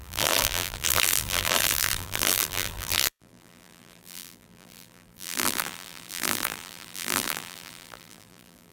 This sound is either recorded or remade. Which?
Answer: remade